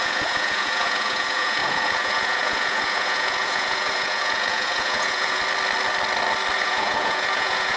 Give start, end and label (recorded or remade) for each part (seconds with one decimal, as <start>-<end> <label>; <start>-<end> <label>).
0.0-5.4 remade; 5.4-6.6 recorded; 6.6-7.8 remade